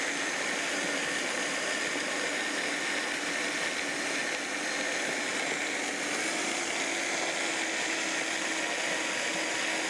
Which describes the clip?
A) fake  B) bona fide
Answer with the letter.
B